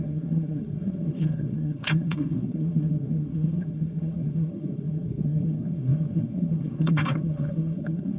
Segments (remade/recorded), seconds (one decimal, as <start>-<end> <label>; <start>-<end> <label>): 0.0-8.2 remade